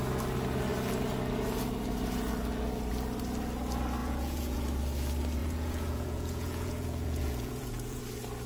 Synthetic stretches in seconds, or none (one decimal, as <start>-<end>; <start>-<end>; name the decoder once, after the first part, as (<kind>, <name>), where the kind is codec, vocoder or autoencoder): 4.0-4.6 (vocoder, Vocos); 5.4-8.0